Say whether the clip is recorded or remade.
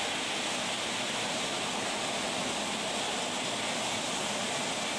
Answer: recorded